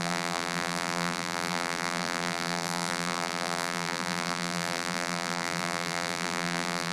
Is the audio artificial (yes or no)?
yes